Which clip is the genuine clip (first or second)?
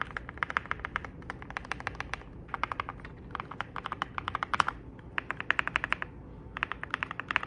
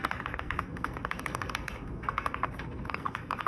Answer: first